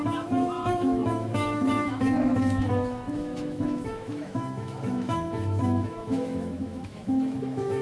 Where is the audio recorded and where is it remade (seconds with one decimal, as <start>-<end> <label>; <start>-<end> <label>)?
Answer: 0.0-7.8 remade